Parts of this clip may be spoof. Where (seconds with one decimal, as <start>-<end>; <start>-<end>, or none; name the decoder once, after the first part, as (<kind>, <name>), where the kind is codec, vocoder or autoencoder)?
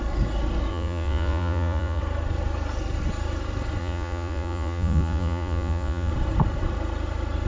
0.7-2.0 (vocoder, Vocos); 3.8-6.1